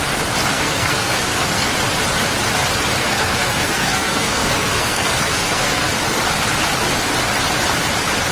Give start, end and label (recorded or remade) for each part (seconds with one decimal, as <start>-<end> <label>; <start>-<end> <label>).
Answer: 0.0-0.5 recorded; 0.5-1.7 remade; 1.7-3.0 recorded; 3.0-5.9 remade; 5.9-8.3 recorded